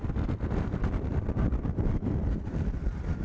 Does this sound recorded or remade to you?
recorded